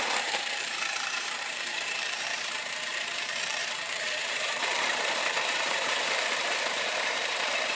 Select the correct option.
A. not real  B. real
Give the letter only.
A